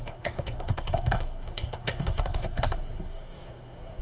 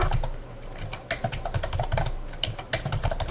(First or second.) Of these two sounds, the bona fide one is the second